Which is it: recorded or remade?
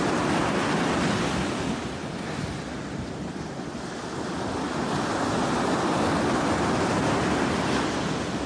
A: recorded